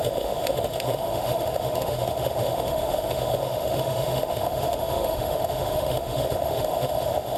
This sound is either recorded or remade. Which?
remade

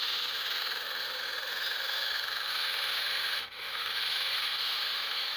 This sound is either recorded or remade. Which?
remade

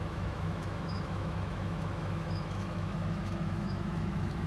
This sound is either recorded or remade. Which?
remade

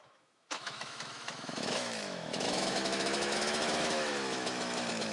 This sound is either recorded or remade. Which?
remade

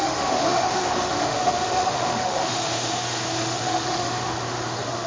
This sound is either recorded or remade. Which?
remade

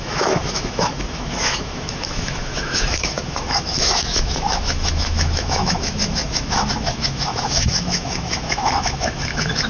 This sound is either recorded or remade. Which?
remade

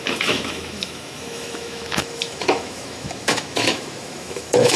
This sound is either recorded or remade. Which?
remade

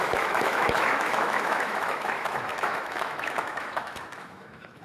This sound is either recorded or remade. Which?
remade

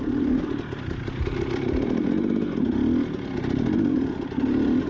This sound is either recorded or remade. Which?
recorded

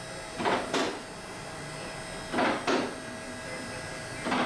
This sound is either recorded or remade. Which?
recorded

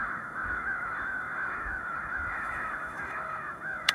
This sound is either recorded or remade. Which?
remade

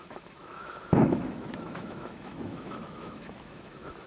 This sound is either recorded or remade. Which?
remade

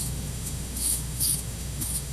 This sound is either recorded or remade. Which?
remade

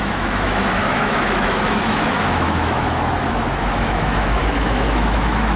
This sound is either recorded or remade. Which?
remade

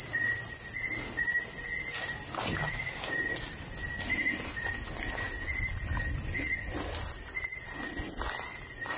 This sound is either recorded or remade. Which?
recorded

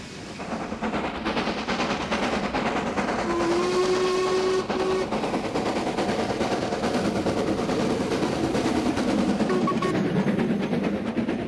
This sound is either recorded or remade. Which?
recorded